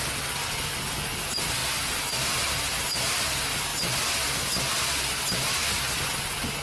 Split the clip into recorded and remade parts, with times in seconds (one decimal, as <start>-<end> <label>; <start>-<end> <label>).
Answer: 0.0-6.6 recorded

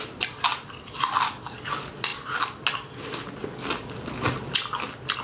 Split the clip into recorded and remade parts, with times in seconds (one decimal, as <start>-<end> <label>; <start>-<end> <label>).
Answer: 0.0-5.2 recorded

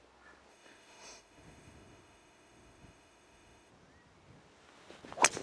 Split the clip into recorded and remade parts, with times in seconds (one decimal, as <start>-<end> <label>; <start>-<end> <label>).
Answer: 0.0-0.5 recorded; 0.5-3.7 remade; 3.7-5.4 recorded